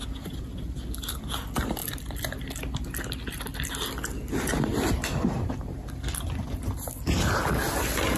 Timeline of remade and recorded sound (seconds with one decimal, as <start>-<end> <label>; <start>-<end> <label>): 0.0-1.8 recorded; 1.8-2.6 remade; 2.6-8.2 recorded